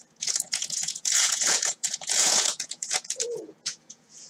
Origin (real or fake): fake